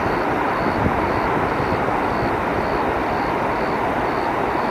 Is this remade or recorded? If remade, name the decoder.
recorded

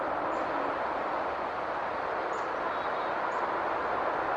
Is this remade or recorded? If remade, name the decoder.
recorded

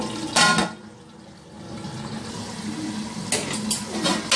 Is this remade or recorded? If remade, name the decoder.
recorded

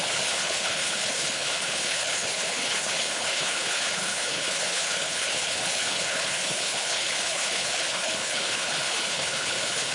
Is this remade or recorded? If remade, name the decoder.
remade, codec, HILCodec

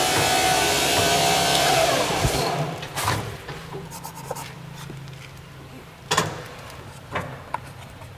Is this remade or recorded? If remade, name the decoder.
remade, vocoder, BigVGAN v2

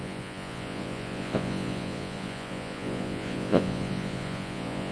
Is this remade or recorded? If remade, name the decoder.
remade, vocoder, Vocos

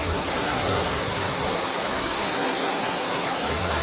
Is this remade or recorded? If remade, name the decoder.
remade, codec, SNAC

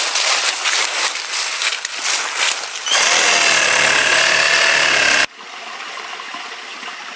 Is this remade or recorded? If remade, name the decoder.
recorded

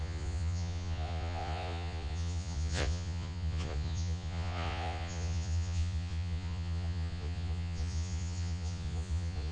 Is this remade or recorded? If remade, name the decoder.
remade, vocoder, Vocos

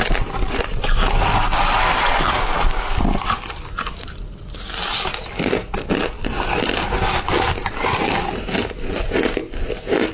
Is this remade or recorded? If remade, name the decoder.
recorded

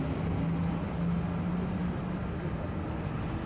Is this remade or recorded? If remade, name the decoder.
recorded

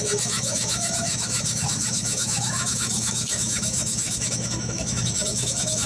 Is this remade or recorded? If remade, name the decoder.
remade, autoencoder, DAC-VAE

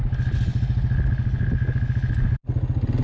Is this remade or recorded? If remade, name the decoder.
recorded